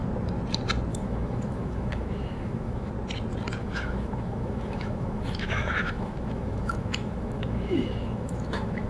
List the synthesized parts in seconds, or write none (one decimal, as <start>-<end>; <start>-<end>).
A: 0.9-2.9; 3.6-8.9